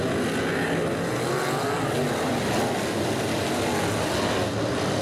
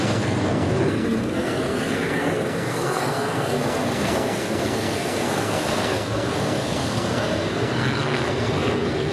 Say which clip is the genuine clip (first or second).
first